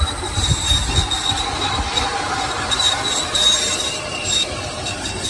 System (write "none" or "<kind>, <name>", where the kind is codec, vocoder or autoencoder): none